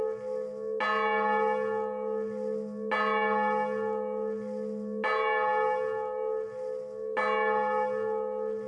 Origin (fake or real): real